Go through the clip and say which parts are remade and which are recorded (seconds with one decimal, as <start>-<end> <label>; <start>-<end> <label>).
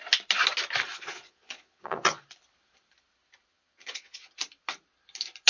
0.0-0.9 recorded; 0.9-2.2 remade; 2.2-3.5 recorded; 3.5-4.3 remade; 4.3-5.5 recorded